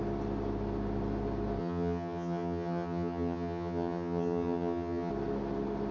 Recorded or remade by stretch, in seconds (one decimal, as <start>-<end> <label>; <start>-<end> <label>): 0.0-1.6 recorded; 1.6-5.1 remade; 5.1-5.9 recorded